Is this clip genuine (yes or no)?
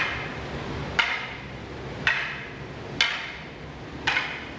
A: yes